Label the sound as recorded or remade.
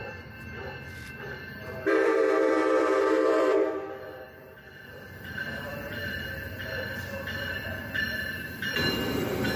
remade